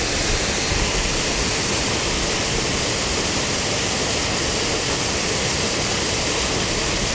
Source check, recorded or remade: recorded